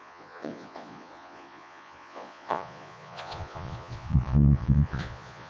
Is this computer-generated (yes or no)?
yes